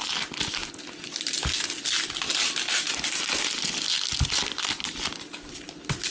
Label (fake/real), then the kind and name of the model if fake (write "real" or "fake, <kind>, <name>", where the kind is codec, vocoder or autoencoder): real